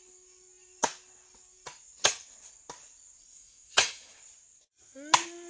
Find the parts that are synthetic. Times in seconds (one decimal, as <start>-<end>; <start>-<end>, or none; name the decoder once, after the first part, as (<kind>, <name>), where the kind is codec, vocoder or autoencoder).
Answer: 3.3-4.2 (autoencoder, DAC-VAE)